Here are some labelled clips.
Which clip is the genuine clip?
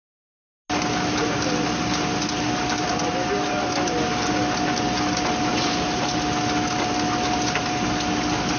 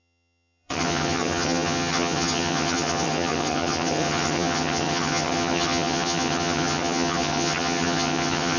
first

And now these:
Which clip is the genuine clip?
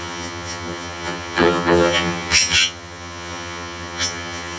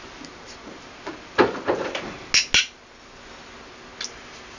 second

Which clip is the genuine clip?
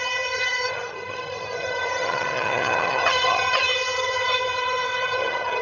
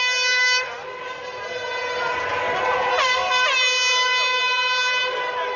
second